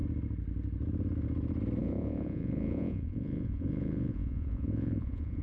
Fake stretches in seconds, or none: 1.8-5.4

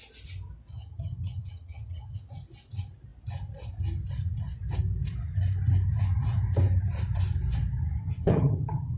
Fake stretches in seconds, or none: 0.7-2.2; 8.0-9.0

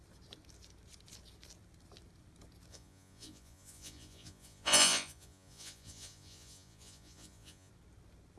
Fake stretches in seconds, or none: 2.7-7.7

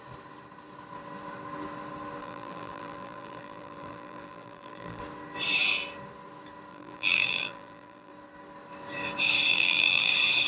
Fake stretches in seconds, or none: 2.2-5.0; 6.7-8.1; 9.5-10.1